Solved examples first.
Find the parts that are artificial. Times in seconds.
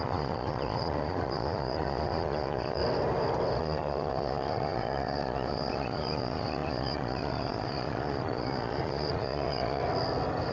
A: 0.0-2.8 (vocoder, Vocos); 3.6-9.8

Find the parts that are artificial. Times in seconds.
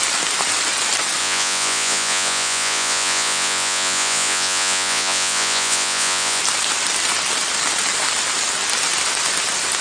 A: 1.2-6.4 (vocoder, Vocos)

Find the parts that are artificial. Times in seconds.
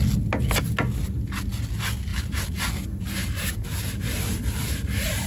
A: 2.1-5.3 (vocoder, BigVGAN v2)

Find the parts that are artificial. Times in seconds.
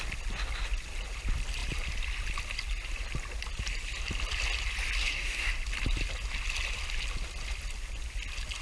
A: 5.0-5.5 (codec, DAC)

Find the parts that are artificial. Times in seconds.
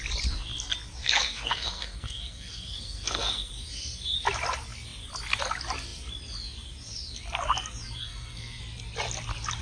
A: 1.0-3.5 (codec, SNAC); 8.0-8.6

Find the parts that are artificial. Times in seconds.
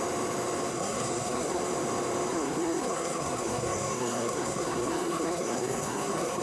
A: 0.7-1.6 (codec, SNAC); 2.3-6.4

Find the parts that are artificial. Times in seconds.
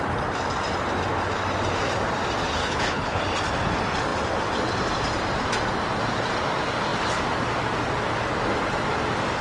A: 2.6-3.2 (codec, HILCodec)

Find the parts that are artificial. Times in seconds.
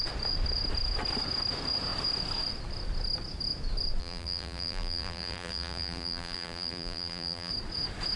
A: 4.0-7.5 (vocoder, BigVGAN v2)